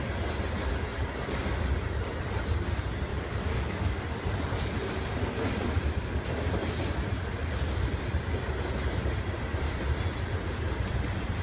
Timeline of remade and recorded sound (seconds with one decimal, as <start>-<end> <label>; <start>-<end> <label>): 0.0-3.1 recorded; 3.1-4.0 remade; 4.0-11.4 recorded